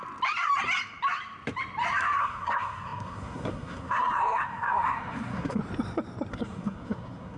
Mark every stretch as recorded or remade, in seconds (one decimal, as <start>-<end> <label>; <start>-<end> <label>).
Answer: 0.0-2.2 recorded; 2.2-5.6 remade; 5.6-6.3 recorded; 6.3-7.4 remade